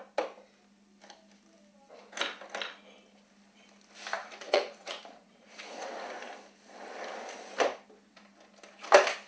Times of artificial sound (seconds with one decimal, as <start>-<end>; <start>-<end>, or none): 4.2-5.9